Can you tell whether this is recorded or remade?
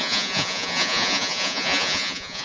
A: remade